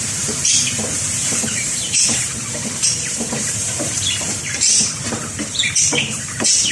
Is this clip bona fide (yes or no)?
no